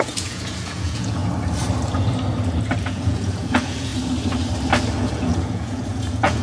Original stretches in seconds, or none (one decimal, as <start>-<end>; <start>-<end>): 1.2-2.8; 3.9-5.0